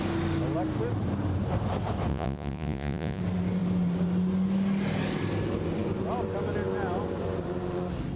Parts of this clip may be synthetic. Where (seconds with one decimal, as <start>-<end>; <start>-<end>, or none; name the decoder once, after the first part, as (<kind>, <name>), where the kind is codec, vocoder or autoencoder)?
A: 2.1-3.2 (vocoder, Vocos)